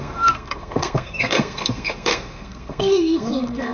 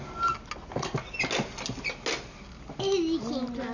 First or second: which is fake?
first